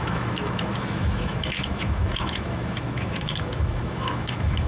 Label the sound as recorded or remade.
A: remade